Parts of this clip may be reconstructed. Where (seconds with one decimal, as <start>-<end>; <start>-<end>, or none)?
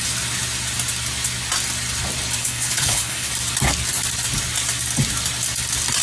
2.4-3.3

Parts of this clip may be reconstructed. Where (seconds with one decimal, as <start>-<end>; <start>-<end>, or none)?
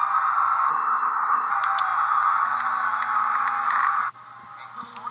0.7-1.5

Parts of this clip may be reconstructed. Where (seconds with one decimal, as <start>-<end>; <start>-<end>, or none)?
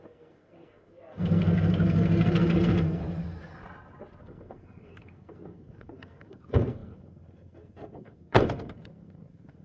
0.0-3.0; 4.2-9.6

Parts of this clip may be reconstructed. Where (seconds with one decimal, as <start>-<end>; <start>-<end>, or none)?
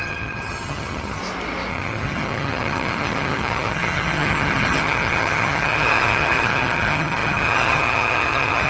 0.0-1.2; 1.7-8.7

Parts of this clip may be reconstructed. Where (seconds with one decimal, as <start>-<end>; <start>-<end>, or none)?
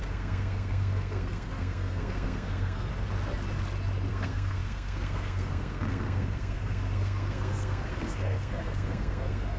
0.0-2.9; 4.1-9.6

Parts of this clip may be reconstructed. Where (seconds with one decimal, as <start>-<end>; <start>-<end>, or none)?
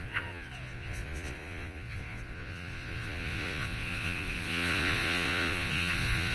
0.0-6.3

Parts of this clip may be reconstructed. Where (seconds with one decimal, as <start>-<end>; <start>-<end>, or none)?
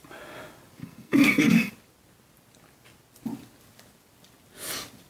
0.8-1.7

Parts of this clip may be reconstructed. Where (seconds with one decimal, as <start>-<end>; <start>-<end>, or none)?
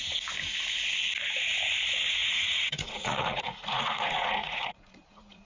2.2-5.5